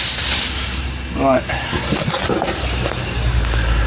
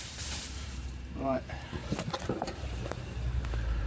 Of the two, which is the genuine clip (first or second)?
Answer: first